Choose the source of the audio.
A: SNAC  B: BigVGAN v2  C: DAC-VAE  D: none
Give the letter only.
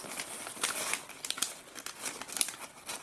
B